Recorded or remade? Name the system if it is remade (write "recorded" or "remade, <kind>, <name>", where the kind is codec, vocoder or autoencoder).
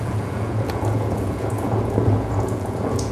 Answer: remade, vocoder, Vocos